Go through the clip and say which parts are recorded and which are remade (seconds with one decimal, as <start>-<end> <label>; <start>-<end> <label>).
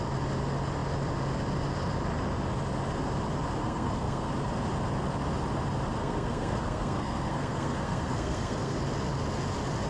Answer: 0.0-3.6 recorded; 3.6-4.3 remade; 4.3-6.0 recorded; 6.0-8.8 remade; 8.8-9.9 recorded